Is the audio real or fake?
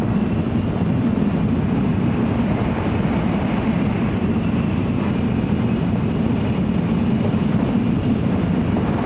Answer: fake